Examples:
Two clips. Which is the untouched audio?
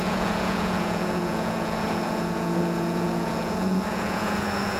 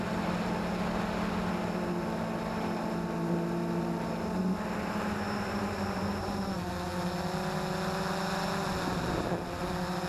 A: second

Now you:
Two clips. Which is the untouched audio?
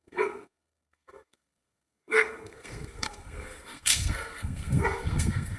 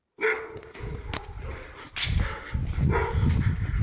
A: second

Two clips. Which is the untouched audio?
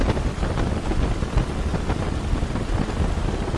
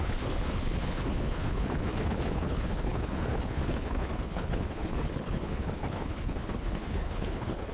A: first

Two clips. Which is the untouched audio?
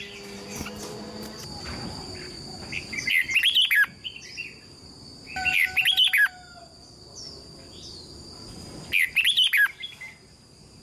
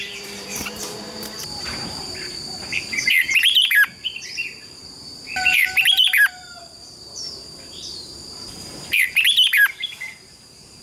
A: first